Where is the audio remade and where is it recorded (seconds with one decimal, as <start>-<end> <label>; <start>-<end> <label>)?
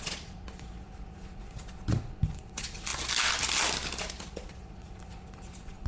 0.0-2.9 remade; 2.9-4.0 recorded; 4.0-5.9 remade